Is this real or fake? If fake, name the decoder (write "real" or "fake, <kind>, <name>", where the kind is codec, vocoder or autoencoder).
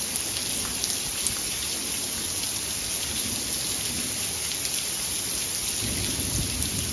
real